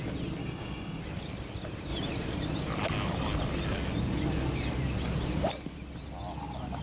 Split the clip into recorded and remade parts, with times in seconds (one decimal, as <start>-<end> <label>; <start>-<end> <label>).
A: 0.0-0.4 recorded; 0.4-1.0 remade; 1.0-6.8 recorded